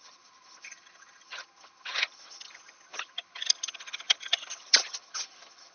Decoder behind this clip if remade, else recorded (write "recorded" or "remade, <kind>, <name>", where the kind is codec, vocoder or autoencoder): remade, vocoder, HiFi-GAN